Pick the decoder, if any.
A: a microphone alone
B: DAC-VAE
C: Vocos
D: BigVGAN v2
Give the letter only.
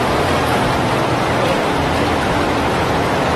D